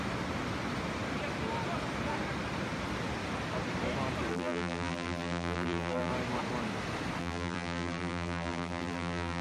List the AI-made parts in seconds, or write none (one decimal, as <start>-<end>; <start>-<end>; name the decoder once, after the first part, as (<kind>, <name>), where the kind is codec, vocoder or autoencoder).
4.3-6.1 (vocoder, BigVGAN v2); 7.2-9.4